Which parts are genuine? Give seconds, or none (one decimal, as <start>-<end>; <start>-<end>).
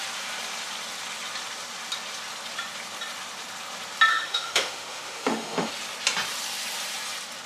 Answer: 0.0-4.1; 5.7-7.5